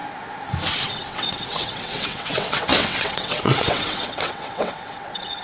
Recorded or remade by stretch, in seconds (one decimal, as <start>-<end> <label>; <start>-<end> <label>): 0.0-0.7 recorded; 0.7-5.4 remade